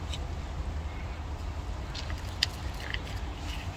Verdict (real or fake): real